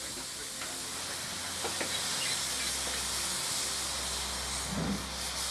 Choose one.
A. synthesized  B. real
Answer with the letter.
B